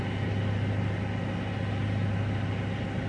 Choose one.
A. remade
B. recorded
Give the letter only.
B